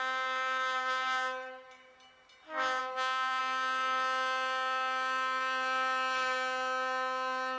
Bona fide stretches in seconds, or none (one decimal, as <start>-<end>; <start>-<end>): 0.0-2.8; 3.4-7.6